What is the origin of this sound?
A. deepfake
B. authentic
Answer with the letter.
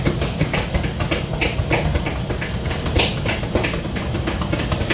B